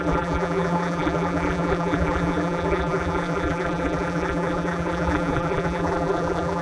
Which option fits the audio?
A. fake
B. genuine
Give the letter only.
A